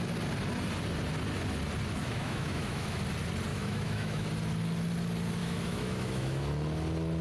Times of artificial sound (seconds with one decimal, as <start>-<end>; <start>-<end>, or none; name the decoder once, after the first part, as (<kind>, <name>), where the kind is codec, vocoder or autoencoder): 2.0-3.0 (autoencoder, DAC-VAE); 3.5-4.3; 5.4-6.5